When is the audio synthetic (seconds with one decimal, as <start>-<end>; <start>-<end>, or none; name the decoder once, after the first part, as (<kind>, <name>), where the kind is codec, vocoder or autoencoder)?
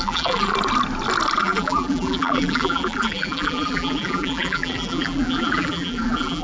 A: 0.0-0.5 (vocoder, BigVGAN v2); 1.4-6.4